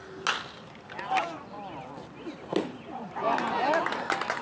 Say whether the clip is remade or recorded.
recorded